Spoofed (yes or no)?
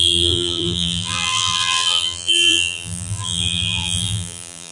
yes